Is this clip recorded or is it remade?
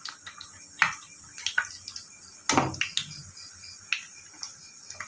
recorded